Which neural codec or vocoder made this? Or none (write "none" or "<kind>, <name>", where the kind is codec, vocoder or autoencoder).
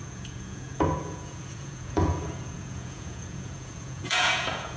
vocoder, Vocos